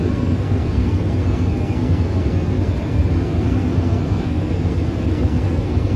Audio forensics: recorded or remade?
remade